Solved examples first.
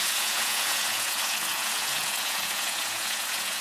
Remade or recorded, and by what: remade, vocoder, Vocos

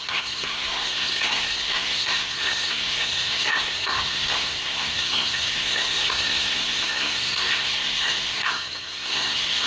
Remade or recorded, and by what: remade, codec, SNAC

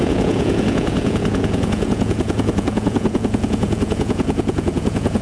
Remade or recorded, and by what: remade, vocoder, Vocos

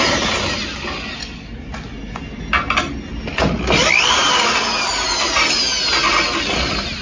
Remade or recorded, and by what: recorded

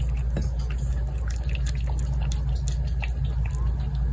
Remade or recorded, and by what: recorded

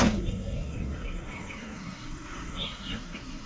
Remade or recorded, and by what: remade, codec, SNAC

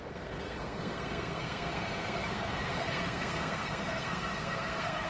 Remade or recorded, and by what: remade, codec, SNAC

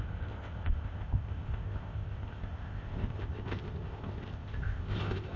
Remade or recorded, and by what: remade, codec, ZipCodec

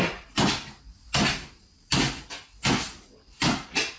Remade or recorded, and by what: recorded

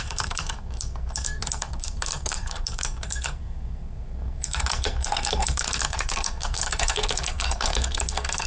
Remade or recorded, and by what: remade, codec, SNAC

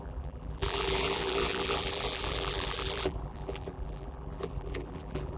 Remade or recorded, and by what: remade, vocoder, BigVGAN v2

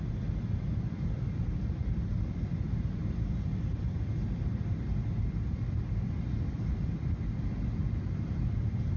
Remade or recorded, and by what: recorded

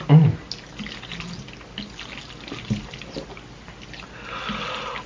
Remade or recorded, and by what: recorded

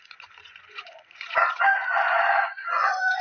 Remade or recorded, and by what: remade, vocoder, Vocos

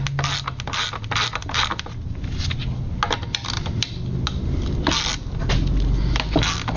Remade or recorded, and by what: recorded